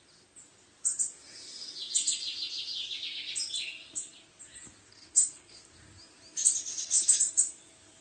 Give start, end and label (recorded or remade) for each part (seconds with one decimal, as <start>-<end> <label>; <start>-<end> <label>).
0.0-4.9 recorded; 4.9-5.6 remade; 5.6-6.7 recorded; 6.7-7.2 remade; 7.2-8.0 recorded